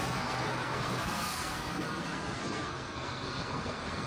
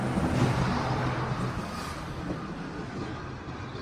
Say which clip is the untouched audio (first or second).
second